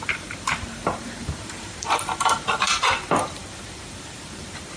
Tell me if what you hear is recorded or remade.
remade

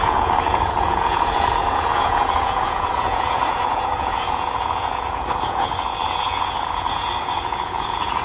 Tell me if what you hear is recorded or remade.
remade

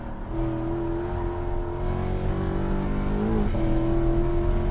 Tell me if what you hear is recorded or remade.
recorded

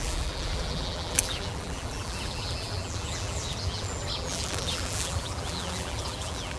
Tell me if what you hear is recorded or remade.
remade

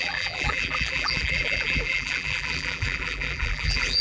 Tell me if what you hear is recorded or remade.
remade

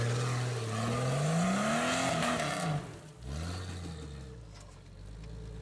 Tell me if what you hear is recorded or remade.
recorded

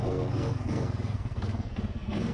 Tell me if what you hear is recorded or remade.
remade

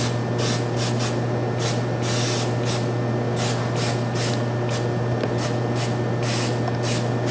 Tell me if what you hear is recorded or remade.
recorded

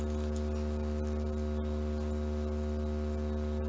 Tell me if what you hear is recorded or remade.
recorded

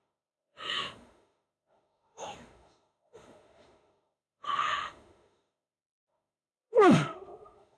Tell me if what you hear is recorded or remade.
remade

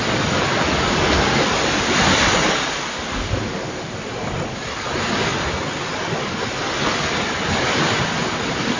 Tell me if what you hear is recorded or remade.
recorded